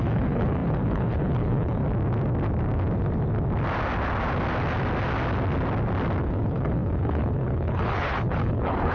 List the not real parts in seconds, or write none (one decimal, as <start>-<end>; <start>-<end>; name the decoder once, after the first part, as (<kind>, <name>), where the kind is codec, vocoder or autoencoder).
0.0-1.8 (codec, HILCodec); 6.2-8.9